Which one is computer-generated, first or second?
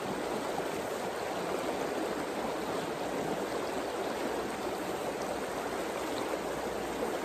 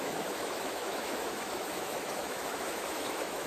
second